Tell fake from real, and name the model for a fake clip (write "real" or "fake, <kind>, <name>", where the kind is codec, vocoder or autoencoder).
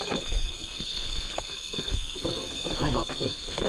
fake, codec, SNAC